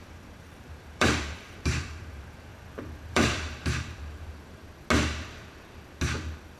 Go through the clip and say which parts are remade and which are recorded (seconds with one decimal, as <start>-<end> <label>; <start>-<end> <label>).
0.0-2.5 remade; 2.5-3.1 recorded; 3.1-4.6 remade; 4.6-6.6 recorded